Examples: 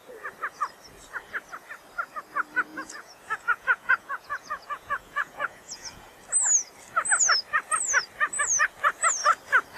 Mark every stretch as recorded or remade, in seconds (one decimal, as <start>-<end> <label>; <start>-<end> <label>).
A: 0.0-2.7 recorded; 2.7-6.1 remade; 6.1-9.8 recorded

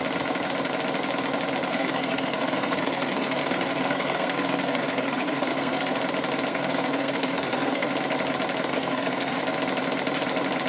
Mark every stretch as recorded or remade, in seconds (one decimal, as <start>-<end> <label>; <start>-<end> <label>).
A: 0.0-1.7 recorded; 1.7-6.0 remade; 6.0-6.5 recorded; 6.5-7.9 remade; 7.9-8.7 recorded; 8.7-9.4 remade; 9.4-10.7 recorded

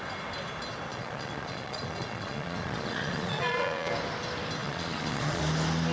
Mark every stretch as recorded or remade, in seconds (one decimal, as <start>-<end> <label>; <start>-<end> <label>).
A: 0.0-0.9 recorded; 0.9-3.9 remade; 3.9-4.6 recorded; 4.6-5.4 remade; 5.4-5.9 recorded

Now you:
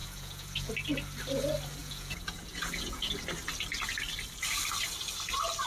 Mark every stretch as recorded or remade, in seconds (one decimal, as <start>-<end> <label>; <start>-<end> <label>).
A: 0.0-0.7 remade; 0.7-1.8 recorded; 1.8-3.1 remade; 3.1-5.7 recorded

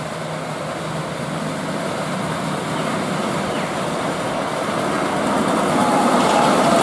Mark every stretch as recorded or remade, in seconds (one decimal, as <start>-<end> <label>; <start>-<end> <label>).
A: 0.0-5.8 recorded; 5.8-6.8 remade

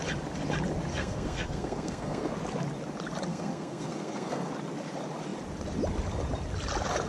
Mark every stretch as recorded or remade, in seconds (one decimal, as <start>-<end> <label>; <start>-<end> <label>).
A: 0.0-0.9 recorded; 0.9-2.3 remade; 2.3-3.3 recorded; 3.3-4.5 remade; 4.5-7.1 recorded